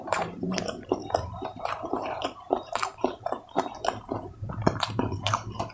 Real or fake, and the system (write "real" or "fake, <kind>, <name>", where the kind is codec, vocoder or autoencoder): fake, vocoder, BigVGAN v2